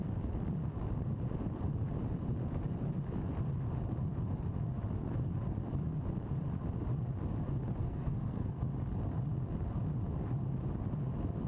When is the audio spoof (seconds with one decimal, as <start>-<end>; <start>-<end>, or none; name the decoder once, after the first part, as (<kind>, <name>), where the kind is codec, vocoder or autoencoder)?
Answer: 7.8-8.6 (codec, SNAC)